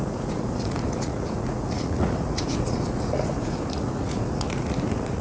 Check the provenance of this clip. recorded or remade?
remade